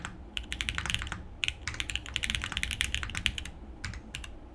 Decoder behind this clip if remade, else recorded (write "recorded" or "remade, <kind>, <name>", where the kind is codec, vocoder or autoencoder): recorded